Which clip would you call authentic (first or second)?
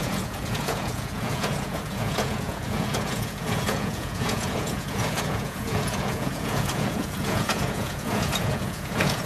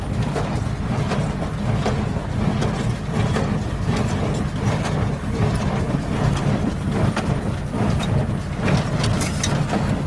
second